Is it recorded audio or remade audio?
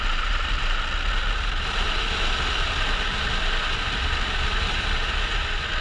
recorded